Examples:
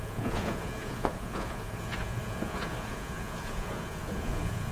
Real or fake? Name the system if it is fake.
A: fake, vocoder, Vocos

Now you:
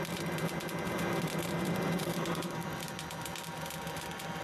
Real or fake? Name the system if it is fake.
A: real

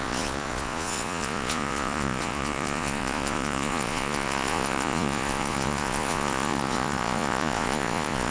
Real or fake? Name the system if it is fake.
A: fake, vocoder, Vocos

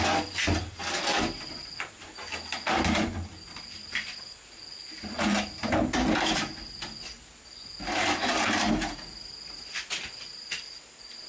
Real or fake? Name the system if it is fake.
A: real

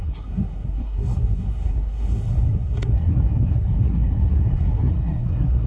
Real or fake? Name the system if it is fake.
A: fake, codec, SNAC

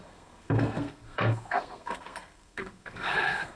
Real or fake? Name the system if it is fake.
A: fake, codec, SNAC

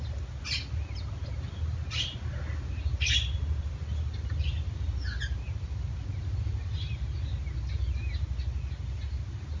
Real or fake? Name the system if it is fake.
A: real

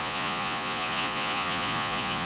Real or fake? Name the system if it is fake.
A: fake, vocoder, Vocos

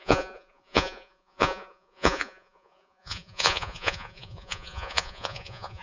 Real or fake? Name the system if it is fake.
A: fake, vocoder, Vocos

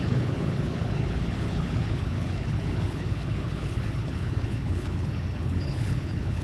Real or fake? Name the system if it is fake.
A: fake, codec, HILCodec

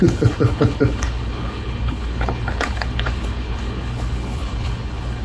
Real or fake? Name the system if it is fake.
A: fake, codec, HILCodec